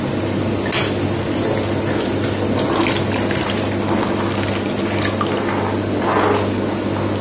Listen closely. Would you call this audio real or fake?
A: real